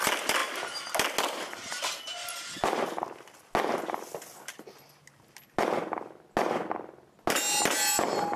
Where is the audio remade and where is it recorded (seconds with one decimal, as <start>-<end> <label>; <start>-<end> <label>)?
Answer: 0.0-8.4 recorded